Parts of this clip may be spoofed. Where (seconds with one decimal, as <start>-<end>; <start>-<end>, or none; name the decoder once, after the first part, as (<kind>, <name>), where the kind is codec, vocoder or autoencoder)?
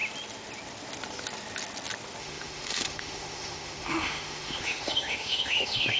2.2-6.0 (autoencoder, DAC-VAE)